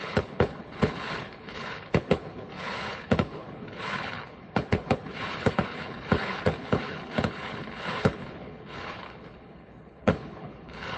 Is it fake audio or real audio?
fake